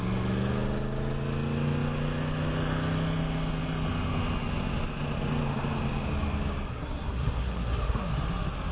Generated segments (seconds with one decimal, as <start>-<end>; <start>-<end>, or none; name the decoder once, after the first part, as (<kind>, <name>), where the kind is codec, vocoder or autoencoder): 6.7-8.1 (codec, SNAC)

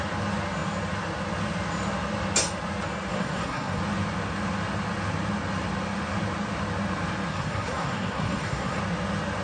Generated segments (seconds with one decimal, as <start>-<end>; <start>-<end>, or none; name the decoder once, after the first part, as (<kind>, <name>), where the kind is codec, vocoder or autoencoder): 3.1-3.8 (codec, SNAC); 7.3-8.8

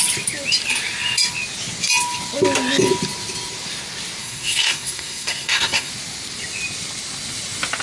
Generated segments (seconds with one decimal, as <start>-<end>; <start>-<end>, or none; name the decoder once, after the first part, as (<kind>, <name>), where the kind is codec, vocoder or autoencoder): 4.2-5.9 (codec, SNAC)

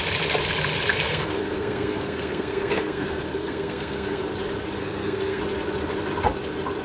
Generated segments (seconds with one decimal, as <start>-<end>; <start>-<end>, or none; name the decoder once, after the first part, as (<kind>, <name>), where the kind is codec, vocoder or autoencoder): 0.9-4.2 (codec, SNAC); 4.8-5.4

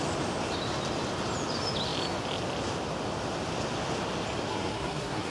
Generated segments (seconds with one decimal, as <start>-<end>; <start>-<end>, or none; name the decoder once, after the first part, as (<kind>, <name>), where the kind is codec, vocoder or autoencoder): 4.5-5.3 (codec, SNAC)

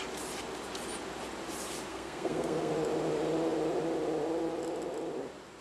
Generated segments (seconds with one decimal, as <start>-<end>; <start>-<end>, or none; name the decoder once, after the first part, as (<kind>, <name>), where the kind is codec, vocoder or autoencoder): 1.9-2.7 (codec, SNAC)

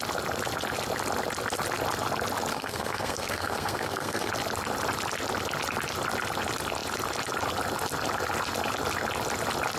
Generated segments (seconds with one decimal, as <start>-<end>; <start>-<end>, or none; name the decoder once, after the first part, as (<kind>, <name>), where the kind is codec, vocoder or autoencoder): 2.5-4.3 (codec, SNAC)